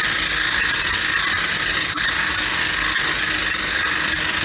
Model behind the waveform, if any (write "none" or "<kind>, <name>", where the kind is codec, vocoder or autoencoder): none